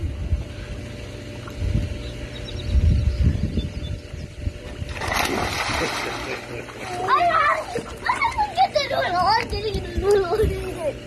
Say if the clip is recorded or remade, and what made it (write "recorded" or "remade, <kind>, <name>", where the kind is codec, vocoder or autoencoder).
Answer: recorded